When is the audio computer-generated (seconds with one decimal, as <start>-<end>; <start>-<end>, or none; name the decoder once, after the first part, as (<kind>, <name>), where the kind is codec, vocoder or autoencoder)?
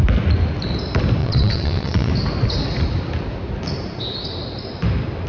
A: 1.2-2.1 (vocoder, WaveNeXt)